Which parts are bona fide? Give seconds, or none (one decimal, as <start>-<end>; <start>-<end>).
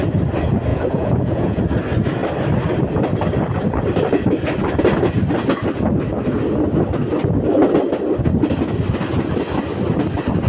0.0-0.7; 1.6-10.5